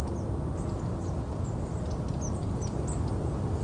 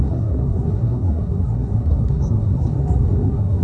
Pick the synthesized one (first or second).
second